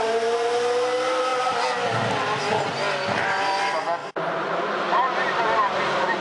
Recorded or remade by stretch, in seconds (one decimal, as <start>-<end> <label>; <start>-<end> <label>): 0.0-4.0 recorded; 4.0-4.8 remade; 4.8-6.2 recorded